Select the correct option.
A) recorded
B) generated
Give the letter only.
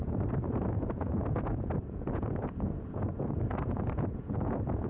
B